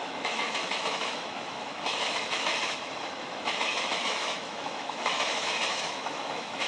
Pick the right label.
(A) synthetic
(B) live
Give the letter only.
A